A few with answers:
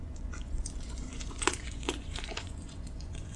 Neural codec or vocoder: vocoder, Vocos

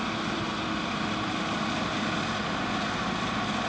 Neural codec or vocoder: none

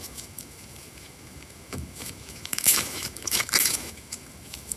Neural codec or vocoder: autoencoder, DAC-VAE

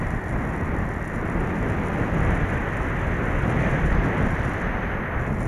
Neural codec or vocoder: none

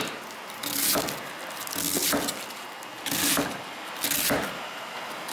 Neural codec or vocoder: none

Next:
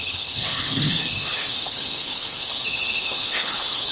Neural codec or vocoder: codec, HILCodec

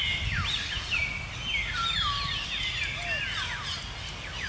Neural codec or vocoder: none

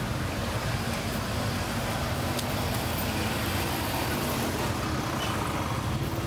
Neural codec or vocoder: none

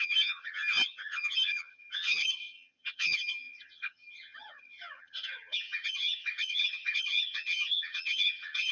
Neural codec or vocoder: vocoder, HiFi-GAN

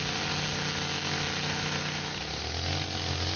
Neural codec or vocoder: none